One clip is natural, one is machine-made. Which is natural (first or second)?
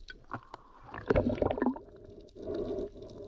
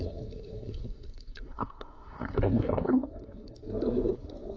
first